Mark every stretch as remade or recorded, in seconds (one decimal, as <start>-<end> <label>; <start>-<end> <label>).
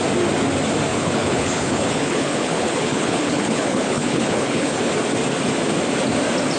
0.0-0.9 recorded; 0.9-4.9 remade; 4.9-6.6 recorded